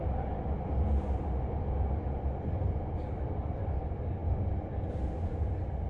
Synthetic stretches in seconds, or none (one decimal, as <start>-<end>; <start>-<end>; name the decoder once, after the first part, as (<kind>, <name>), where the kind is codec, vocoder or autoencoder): none